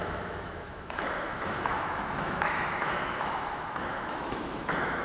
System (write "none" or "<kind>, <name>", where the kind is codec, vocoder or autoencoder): autoencoder, DAC-VAE